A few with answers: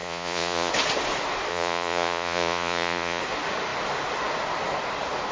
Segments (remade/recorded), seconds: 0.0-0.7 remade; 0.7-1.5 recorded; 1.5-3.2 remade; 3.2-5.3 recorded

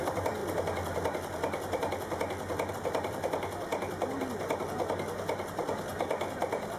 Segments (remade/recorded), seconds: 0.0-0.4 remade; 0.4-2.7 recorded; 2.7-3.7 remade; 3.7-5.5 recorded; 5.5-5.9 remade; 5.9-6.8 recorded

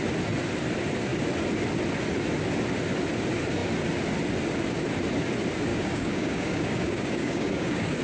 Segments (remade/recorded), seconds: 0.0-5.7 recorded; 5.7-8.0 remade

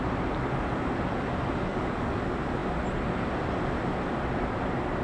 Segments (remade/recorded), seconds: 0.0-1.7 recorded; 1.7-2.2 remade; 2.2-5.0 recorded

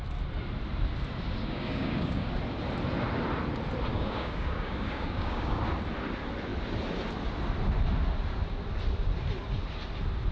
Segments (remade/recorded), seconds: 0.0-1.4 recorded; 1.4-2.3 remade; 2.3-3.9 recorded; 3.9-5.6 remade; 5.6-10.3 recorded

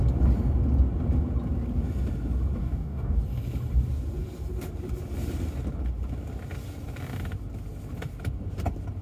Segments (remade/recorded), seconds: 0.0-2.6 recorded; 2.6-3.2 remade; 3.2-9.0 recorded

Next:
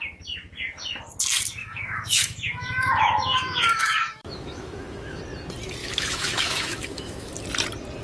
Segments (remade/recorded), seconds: 0.0-1.6 recorded; 1.6-5.2 remade; 5.2-5.8 recorded; 5.8-7.3 remade; 7.3-8.0 recorded